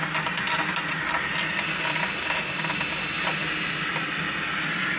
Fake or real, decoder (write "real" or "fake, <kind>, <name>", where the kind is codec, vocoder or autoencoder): real